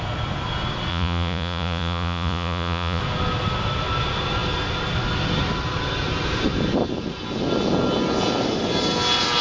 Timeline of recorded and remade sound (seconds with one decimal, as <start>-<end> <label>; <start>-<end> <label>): 0.0-0.9 recorded; 0.9-3.0 remade; 3.0-9.4 recorded